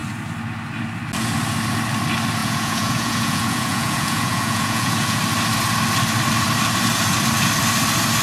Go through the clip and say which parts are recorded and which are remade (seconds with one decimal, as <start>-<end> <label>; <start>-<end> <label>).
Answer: 0.0-2.4 recorded; 2.4-5.2 remade; 5.2-8.2 recorded